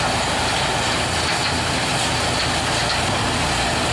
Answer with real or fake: real